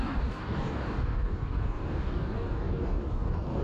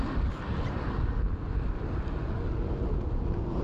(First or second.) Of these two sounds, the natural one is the second